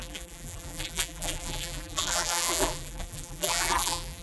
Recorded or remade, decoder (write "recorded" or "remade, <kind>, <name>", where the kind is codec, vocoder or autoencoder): remade, vocoder, BigVGAN v2